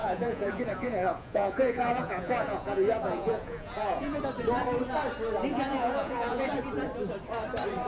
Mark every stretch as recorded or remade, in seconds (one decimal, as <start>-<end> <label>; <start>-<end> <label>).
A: 0.0-4.2 remade; 4.2-5.5 recorded; 5.5-6.5 remade; 6.5-7.9 recorded